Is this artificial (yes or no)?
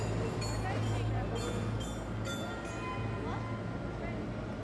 no